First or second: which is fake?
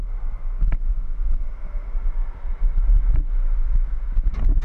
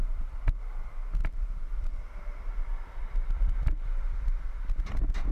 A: second